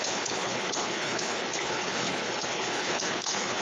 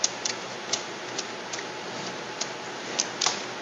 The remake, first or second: first